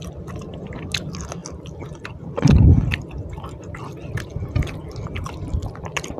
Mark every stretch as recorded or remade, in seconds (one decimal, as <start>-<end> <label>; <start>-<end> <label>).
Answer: 0.0-6.2 recorded